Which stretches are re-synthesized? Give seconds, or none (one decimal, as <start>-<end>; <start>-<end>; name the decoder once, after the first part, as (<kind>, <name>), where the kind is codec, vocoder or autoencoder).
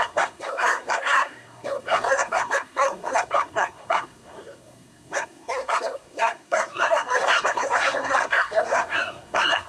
0.0-9.7 (codec, SNAC)